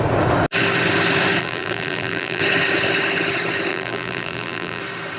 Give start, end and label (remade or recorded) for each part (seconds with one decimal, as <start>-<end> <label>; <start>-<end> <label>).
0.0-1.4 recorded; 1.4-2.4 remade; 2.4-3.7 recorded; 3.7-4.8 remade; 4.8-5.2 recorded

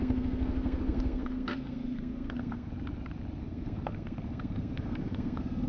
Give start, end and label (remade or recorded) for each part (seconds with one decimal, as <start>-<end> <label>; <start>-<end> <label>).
0.0-2.7 remade; 2.7-3.4 recorded; 3.4-5.7 remade

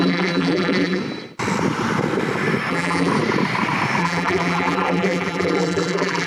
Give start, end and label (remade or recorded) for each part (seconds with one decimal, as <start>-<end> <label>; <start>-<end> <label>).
0.0-1.0 remade; 1.0-2.7 recorded; 2.7-3.1 remade; 3.1-4.0 recorded; 4.0-6.3 remade